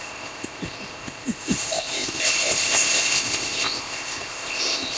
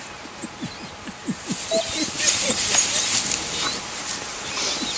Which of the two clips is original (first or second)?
second